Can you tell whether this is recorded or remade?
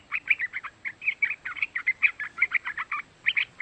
recorded